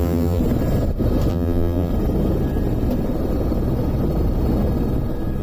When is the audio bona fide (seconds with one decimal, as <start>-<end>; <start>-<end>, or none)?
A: 0.4-1.3; 1.9-5.4